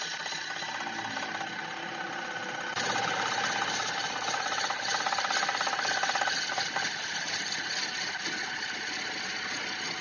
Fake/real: real